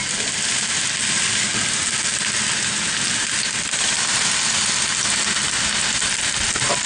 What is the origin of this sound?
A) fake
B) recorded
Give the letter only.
B